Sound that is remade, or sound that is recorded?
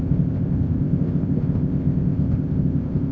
remade